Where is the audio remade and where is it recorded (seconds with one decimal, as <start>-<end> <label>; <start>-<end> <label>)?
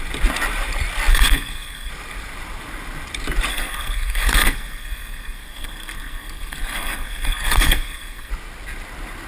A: 0.0-1.1 recorded; 1.1-1.9 remade; 1.9-3.5 recorded; 3.5-8.3 remade; 8.3-9.3 recorded